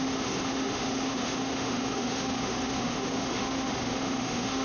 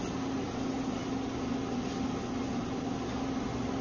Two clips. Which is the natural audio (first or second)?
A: second